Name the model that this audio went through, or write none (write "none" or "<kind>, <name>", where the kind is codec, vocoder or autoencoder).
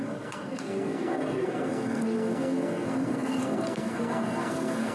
codec, SNAC